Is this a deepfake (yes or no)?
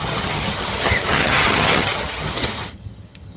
yes